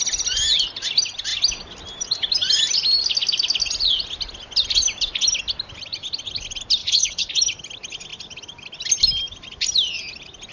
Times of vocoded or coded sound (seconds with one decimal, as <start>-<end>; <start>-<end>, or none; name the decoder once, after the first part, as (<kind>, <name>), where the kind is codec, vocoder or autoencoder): 6.8-7.3 (codec, HILCodec)